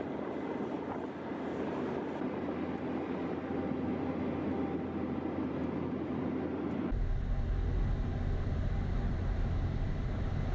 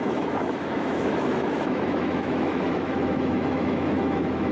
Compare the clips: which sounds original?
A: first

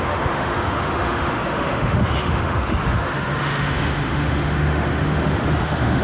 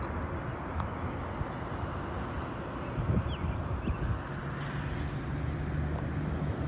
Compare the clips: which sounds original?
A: second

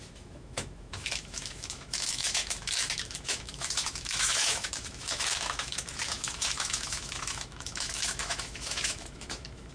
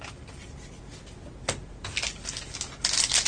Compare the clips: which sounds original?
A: second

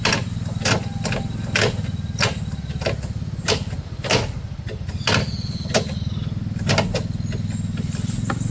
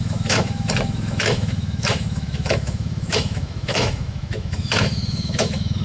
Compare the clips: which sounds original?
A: first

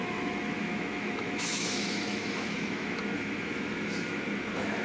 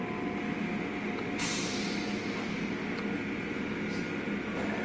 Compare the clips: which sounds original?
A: second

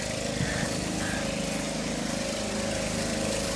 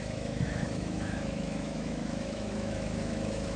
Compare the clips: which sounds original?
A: first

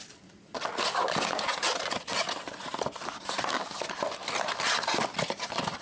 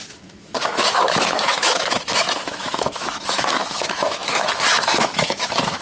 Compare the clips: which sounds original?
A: first